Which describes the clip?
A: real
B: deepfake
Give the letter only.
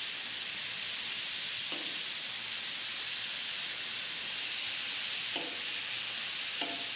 A